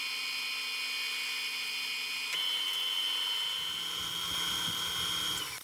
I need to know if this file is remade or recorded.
recorded